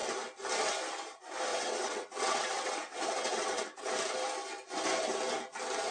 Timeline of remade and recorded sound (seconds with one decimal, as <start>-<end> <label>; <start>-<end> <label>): 0.0-1.5 recorded; 1.5-3.9 remade; 3.9-5.9 recorded

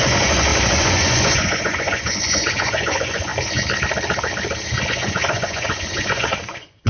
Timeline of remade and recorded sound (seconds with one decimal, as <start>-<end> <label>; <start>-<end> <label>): 0.0-3.3 remade; 3.3-4.9 recorded; 4.9-6.9 remade